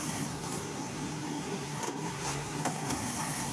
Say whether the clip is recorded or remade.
remade